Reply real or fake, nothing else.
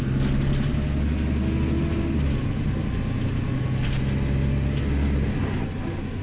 real